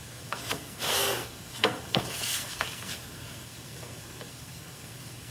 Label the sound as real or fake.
fake